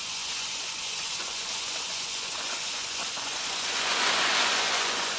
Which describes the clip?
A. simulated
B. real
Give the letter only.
A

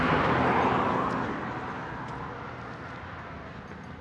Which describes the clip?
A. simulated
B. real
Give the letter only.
B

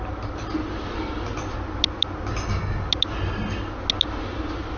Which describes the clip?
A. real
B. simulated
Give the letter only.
A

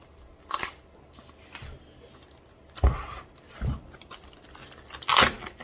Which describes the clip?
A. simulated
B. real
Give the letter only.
B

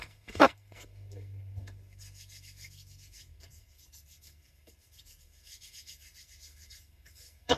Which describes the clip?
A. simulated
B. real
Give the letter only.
A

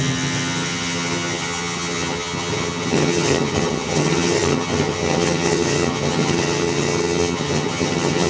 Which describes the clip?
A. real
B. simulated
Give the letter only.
B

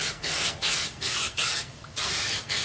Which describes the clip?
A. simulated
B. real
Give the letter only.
A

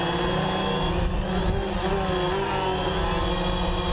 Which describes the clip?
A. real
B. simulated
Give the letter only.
A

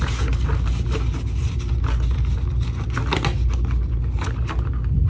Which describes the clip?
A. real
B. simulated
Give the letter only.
A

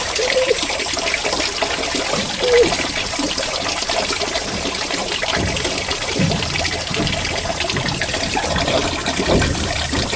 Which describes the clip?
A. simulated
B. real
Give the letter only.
A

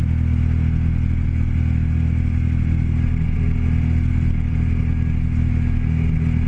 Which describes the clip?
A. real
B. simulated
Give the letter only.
A